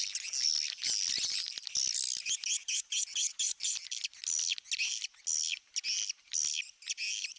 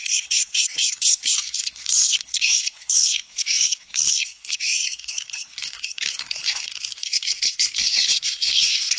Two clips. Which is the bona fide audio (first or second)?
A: first